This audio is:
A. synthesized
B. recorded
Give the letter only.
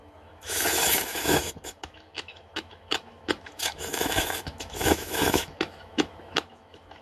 A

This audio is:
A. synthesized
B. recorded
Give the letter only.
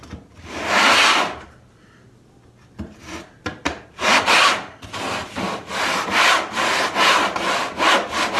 B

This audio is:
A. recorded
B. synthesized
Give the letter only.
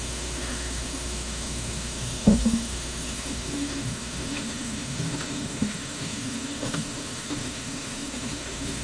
B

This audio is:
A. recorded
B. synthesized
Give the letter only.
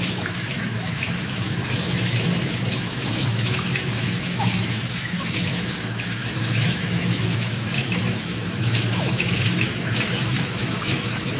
B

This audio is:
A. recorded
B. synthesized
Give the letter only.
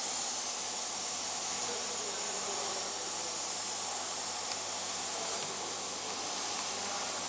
A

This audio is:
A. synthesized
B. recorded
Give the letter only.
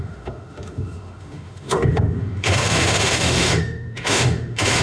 A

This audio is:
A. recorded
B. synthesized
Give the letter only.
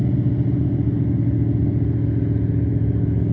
A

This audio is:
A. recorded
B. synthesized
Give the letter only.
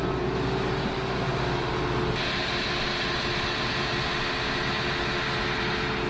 A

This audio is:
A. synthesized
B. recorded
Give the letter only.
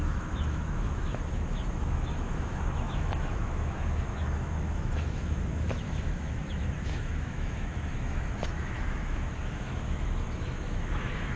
A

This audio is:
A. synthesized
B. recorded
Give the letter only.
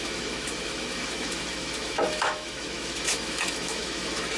A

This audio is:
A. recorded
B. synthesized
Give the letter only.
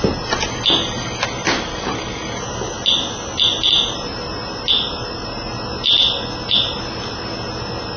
A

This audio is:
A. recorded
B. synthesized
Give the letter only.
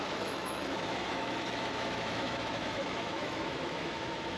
B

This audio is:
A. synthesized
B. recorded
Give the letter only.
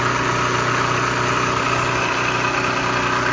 B